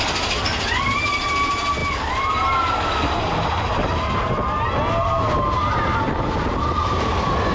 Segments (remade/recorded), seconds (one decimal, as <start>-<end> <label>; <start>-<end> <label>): 0.0-7.5 recorded